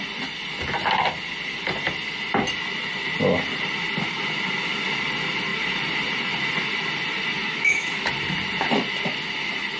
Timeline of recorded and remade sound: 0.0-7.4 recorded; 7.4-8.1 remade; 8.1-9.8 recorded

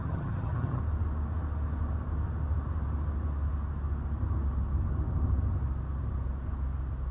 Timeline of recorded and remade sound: 0.0-0.8 remade; 0.8-7.1 recorded

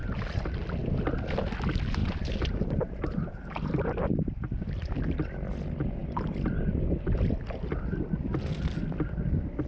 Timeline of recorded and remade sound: 0.0-2.0 recorded; 2.0-3.8 remade; 3.8-9.7 recorded